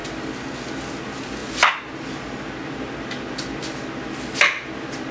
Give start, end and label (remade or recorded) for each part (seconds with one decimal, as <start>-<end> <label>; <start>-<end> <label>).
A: 0.0-5.1 recorded